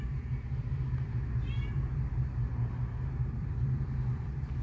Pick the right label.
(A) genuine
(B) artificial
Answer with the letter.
B